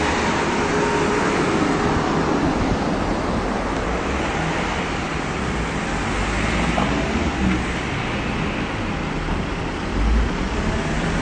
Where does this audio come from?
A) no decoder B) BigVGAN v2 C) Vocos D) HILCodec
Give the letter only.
A